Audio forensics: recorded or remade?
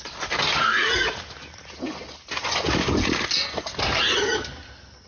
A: recorded